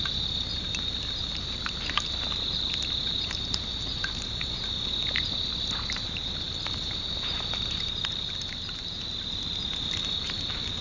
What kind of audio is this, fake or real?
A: fake